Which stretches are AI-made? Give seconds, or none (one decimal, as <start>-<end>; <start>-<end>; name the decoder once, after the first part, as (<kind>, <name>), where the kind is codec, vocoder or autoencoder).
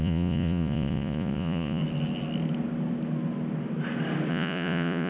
0.0-1.8 (vocoder, Vocos); 4.3-5.1